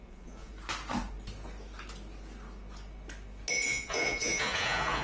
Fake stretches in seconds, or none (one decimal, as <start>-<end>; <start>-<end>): 0.0-0.5; 3.5-5.0

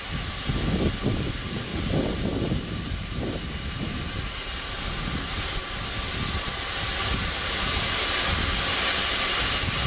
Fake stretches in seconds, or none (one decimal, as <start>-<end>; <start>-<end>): none

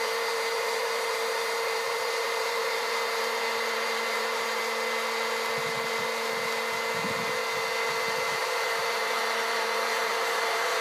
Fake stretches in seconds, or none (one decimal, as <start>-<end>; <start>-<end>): 0.0-4.6; 8.4-10.8

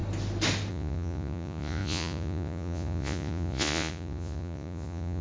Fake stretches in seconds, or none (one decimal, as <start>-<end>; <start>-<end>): 0.7-5.2

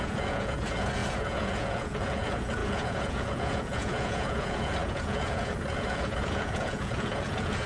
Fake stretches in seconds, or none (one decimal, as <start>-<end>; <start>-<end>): 0.0-7.7

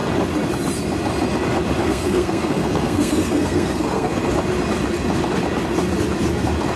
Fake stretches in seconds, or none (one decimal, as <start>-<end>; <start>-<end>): 1.8-4.2

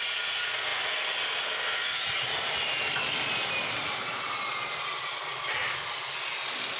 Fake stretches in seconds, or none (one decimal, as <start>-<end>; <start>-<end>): none

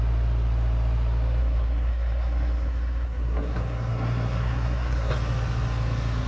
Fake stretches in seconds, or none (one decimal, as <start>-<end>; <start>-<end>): 1.4-5.1